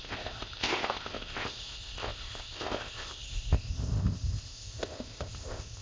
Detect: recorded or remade remade